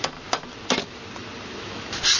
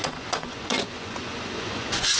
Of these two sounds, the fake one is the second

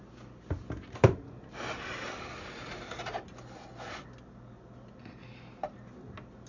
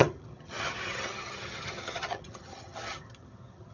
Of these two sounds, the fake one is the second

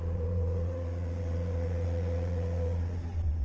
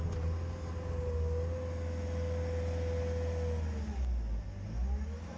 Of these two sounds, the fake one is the first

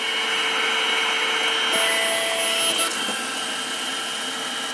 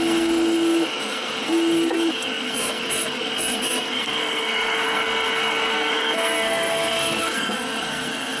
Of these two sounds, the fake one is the second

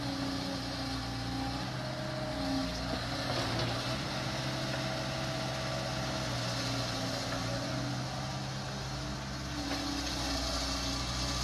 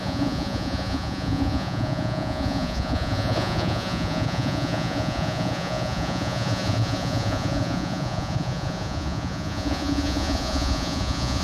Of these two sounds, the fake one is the second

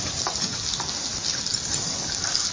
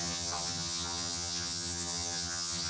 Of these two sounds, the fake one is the second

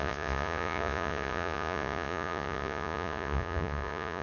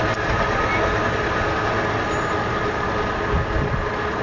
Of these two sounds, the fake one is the first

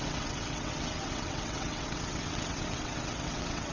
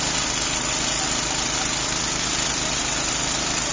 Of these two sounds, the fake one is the first